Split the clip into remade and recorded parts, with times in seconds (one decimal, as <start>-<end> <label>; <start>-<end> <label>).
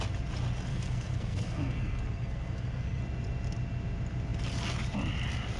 0.0-0.7 recorded; 0.7-3.0 remade; 3.0-5.6 recorded